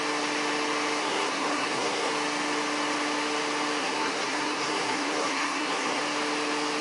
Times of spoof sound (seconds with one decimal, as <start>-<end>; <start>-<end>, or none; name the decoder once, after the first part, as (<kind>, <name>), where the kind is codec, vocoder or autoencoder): 1.0-2.1 (codec, SNAC); 3.8-6.0